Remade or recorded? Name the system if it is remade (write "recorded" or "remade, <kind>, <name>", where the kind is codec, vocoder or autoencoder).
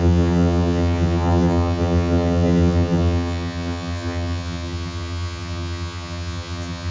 remade, vocoder, HiFi-GAN